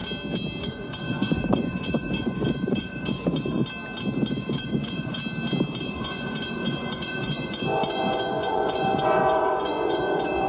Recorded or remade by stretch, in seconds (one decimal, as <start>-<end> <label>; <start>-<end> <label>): 0.0-0.6 recorded; 0.6-3.6 remade; 3.6-4.3 recorded; 4.3-5.2 remade; 5.2-5.8 recorded; 5.8-10.5 remade